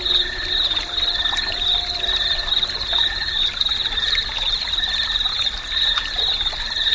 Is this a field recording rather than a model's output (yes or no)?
yes